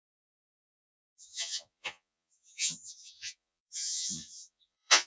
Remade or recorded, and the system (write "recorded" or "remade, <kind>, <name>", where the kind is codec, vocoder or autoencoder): remade, vocoder, Vocos